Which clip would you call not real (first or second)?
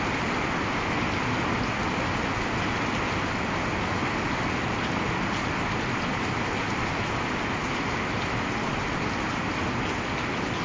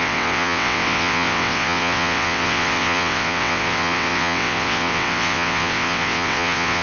second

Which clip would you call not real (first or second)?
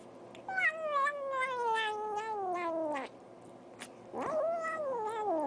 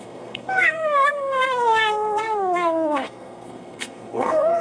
second